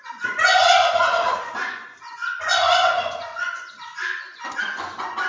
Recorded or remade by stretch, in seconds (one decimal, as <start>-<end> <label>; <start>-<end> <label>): 0.0-5.3 remade